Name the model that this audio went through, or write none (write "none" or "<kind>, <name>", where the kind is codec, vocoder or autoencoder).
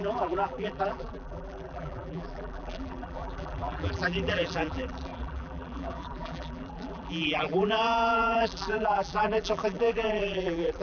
vocoder, BigVGAN v2